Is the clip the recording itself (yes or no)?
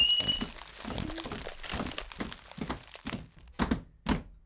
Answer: yes